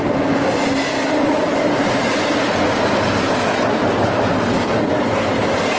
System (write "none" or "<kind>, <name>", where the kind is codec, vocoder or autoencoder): none